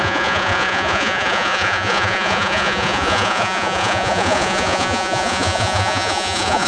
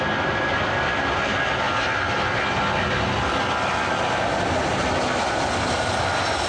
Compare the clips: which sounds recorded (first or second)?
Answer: second